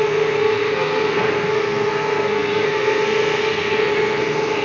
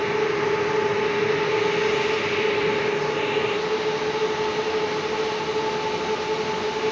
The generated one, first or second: first